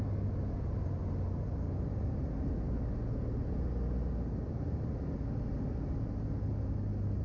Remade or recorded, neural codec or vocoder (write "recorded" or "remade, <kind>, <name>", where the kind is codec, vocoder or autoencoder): recorded